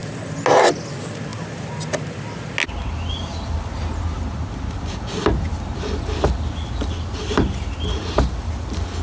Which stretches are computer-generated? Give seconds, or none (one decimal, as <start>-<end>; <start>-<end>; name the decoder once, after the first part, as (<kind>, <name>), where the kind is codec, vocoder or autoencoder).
none